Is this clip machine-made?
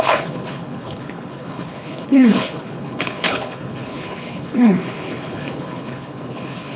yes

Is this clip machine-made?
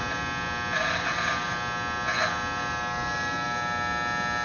no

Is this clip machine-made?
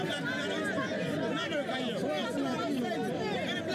no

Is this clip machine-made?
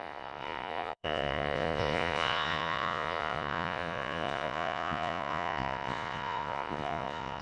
yes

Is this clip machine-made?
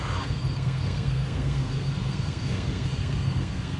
yes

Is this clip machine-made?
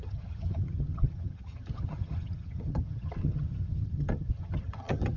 yes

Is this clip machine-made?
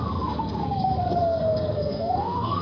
yes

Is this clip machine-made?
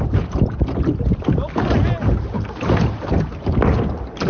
no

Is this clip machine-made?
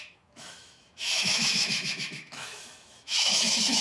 yes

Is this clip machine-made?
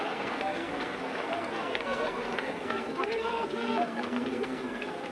yes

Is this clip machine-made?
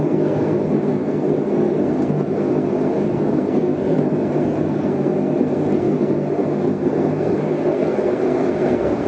yes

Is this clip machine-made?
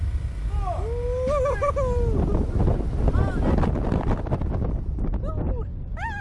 no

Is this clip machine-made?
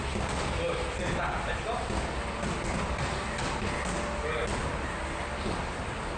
no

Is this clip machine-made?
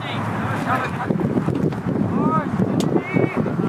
no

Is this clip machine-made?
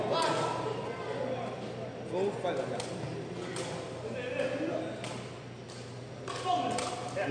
no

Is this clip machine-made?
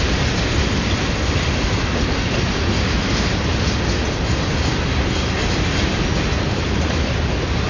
no